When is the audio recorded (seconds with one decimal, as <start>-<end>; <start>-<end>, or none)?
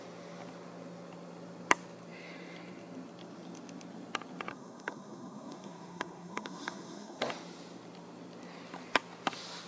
0.0-4.5; 7.2-9.7